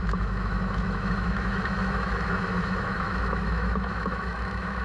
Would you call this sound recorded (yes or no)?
no